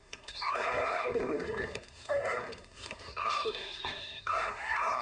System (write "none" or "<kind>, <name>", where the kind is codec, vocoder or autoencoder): codec, SNAC